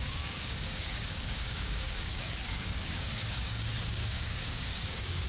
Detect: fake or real fake